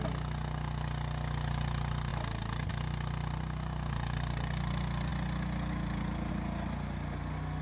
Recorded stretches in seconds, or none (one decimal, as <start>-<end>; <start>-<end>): 0.0-7.6